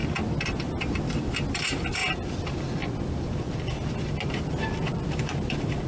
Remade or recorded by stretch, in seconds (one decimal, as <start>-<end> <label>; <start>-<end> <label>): 0.0-0.5 recorded; 0.5-2.0 remade; 2.0-4.4 recorded; 4.4-5.9 remade

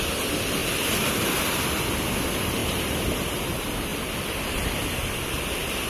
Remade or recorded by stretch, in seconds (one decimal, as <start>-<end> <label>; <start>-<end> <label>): 0.0-0.6 recorded; 0.6-1.9 remade; 1.9-2.6 recorded; 2.6-3.4 remade; 3.4-3.9 recorded; 3.9-4.7 remade; 4.7-5.9 recorded

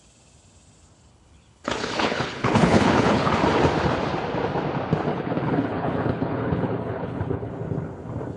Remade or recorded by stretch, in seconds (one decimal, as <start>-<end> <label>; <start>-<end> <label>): 0.0-1.1 recorded; 1.1-3.3 remade; 3.3-5.1 recorded; 5.1-7.5 remade; 7.5-8.4 recorded

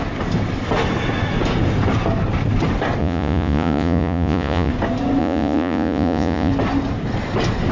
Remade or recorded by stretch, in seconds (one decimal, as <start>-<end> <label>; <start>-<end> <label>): 0.0-3.0 recorded; 3.0-4.7 remade; 4.7-5.2 recorded; 5.2-6.5 remade; 6.5-7.7 recorded

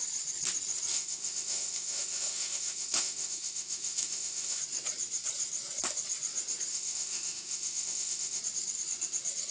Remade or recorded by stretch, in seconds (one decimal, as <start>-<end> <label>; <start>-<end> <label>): 0.0-0.9 recorded; 0.9-4.6 remade; 4.6-6.7 recorded; 6.7-8.4 remade; 8.4-9.5 recorded

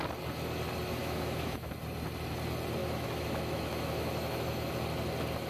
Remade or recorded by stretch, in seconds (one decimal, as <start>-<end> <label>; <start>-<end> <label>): 0.0-1.0 recorded; 1.0-1.7 remade; 1.7-2.8 recorded; 2.8-4.7 remade; 4.7-5.5 recorded

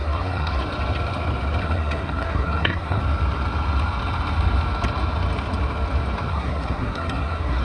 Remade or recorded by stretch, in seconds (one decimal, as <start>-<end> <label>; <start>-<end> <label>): 0.0-0.6 remade; 0.6-1.6 recorded; 1.6-3.0 remade; 3.0-6.3 recorded; 6.3-7.6 remade

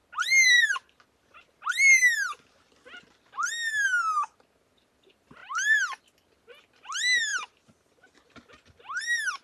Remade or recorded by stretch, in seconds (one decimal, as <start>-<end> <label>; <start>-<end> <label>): 0.0-5.4 recorded; 5.4-6.0 remade; 6.0-9.4 recorded